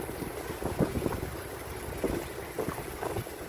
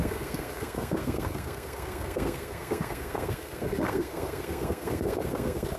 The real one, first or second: first